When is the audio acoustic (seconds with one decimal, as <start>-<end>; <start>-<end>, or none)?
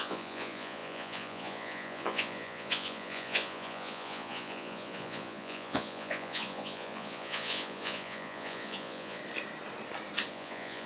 9.2-10.3